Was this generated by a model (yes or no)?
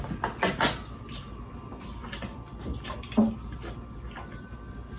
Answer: no